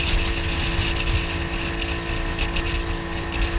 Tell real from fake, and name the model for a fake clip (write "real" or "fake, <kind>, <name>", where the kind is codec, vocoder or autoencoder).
real